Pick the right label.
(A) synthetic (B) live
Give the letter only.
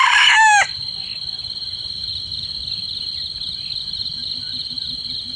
B